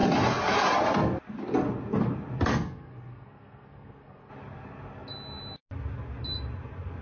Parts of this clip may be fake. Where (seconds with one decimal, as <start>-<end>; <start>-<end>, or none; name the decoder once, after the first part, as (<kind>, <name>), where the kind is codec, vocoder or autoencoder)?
2.5-4.3 (codec, SNAC)